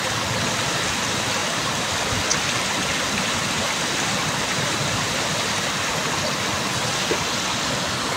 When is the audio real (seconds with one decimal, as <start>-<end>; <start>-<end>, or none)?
0.0-1.4; 1.9-8.2

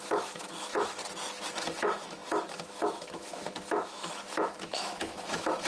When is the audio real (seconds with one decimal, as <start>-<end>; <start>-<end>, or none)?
1.0-1.5

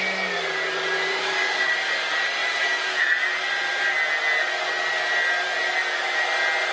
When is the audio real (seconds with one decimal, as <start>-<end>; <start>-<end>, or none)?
0.0-1.1; 1.7-6.7

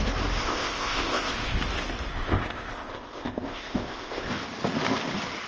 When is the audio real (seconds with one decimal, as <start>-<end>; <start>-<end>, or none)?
0.0-0.4; 1.6-2.1; 4.3-5.5